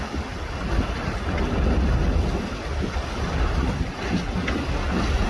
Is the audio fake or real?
real